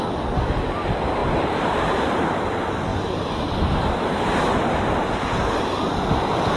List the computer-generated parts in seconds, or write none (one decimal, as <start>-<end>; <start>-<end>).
none